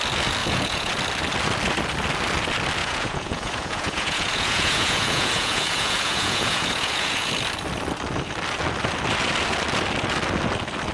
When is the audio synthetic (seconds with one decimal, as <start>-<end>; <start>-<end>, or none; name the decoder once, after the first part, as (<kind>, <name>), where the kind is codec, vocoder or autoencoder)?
0.4-0.9 (vocoder, Vocos); 2.8-7.3